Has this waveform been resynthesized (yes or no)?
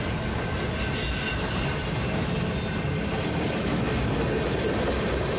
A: no